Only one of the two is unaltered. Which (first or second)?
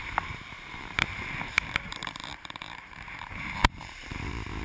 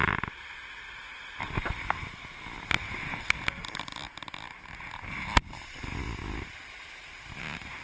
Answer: second